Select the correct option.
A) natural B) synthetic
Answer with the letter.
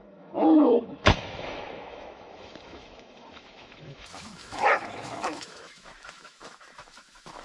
B